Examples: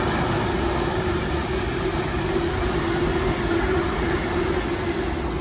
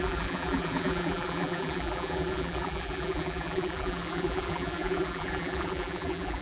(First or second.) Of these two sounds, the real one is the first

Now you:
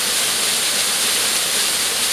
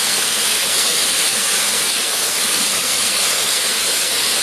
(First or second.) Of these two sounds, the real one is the first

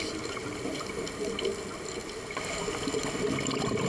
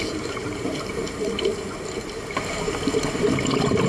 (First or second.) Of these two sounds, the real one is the first